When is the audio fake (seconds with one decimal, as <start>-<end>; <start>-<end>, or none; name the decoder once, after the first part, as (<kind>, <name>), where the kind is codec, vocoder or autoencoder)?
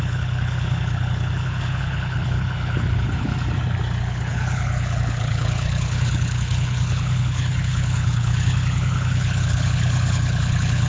0.0-3.3 (codec, HILCodec); 4.0-10.9